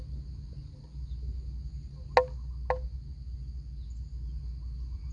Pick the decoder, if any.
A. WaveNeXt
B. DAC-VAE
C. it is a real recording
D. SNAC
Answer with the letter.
C